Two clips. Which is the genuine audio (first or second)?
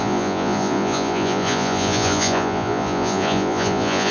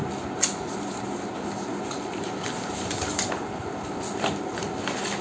second